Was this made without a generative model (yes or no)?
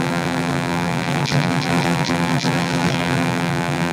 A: no